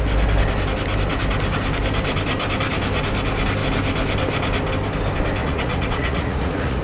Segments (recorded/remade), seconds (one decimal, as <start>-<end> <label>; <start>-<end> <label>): 0.0-5.4 recorded; 5.4-6.8 remade